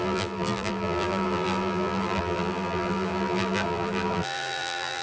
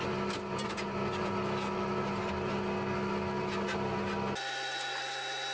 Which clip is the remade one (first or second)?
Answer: first